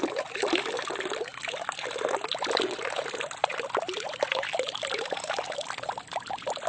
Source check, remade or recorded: recorded